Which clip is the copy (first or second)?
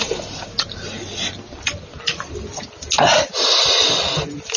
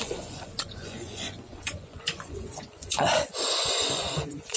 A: second